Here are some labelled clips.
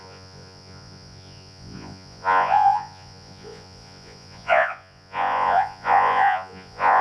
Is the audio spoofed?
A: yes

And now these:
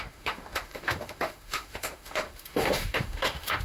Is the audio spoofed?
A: yes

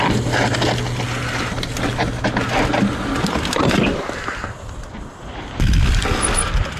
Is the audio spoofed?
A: no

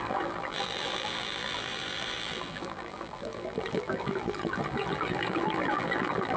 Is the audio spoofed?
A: yes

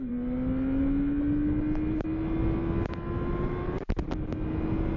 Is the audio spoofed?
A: no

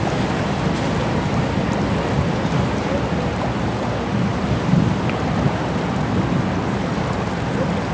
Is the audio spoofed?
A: no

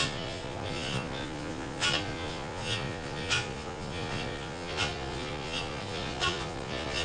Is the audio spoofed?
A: yes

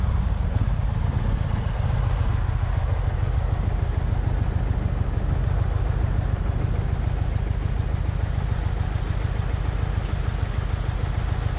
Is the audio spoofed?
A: no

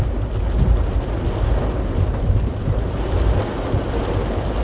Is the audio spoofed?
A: no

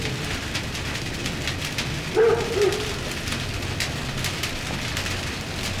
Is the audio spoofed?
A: no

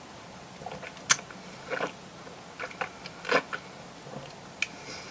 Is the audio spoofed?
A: no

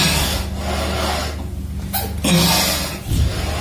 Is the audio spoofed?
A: no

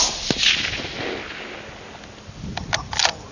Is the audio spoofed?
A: no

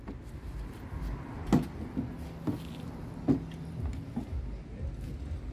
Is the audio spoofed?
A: no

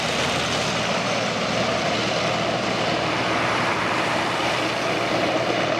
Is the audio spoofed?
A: no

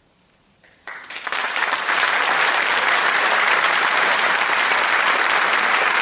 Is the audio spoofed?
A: yes